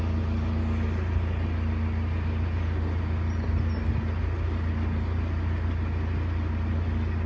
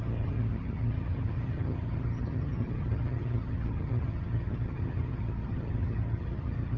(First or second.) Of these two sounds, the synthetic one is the second